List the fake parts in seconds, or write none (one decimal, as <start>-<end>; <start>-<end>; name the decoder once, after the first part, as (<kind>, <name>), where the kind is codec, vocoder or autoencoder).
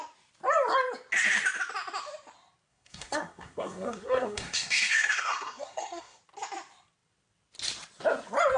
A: 2.7-6.2 (codec, SNAC)